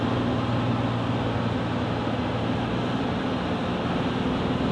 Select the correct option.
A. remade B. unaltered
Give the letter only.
B